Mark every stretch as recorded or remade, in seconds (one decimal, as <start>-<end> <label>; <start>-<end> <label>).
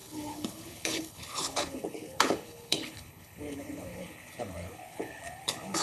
0.0-5.8 remade